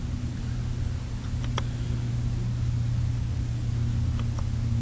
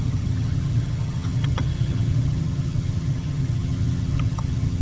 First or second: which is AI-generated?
second